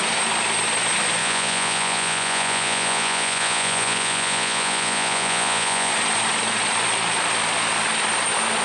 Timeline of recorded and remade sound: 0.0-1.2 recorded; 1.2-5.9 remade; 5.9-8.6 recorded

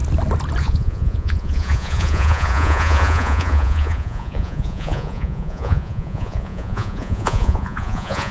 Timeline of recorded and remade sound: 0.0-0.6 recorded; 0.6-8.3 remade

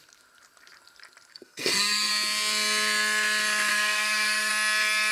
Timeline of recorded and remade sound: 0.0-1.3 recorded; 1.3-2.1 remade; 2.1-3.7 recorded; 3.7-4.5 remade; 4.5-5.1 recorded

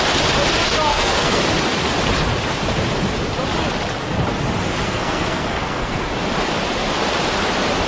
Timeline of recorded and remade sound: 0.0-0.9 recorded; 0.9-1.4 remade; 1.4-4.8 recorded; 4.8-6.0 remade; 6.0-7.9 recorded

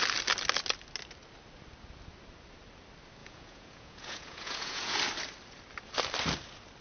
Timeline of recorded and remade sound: 0.0-3.2 recorded; 3.2-5.0 remade; 5.0-6.8 recorded